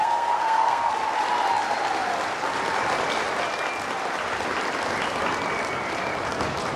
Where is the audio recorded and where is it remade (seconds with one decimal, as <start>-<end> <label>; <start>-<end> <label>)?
0.0-0.9 remade; 0.9-6.8 recorded